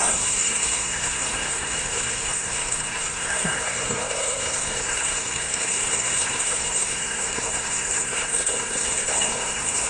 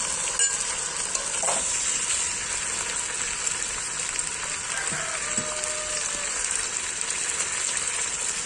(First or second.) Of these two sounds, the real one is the second